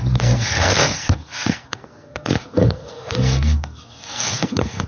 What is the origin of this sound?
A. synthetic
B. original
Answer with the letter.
A